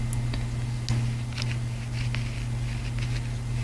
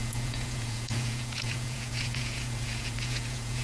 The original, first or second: first